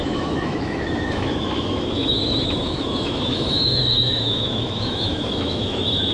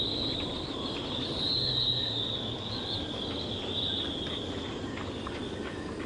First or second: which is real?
second